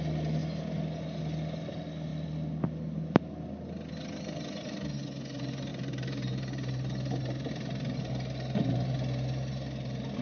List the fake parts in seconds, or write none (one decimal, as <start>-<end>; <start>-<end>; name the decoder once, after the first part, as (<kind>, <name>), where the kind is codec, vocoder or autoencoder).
5.7-7.5 (vocoder, BigVGAN v2)